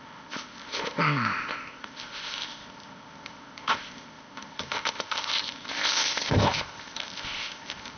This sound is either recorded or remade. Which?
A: remade